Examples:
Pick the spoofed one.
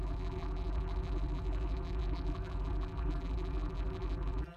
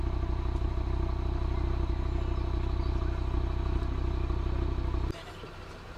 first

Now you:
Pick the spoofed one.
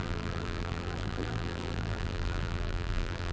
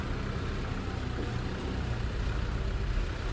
first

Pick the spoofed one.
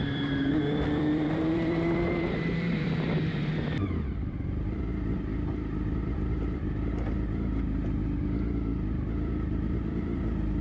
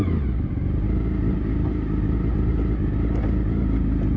first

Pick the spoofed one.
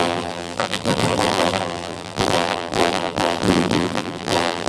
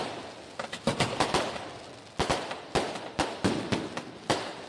first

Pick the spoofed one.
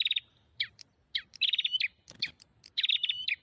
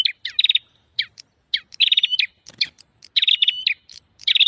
first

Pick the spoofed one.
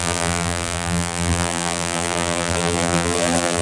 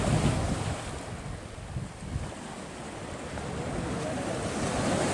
first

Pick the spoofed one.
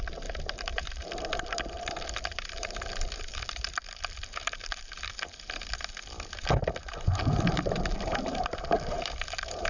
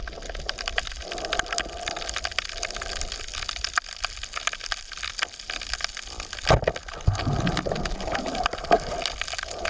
first